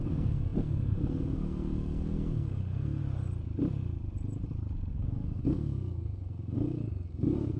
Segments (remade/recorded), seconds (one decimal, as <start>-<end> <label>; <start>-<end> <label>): 0.0-3.0 remade; 3.0-4.9 recorded; 4.9-7.6 remade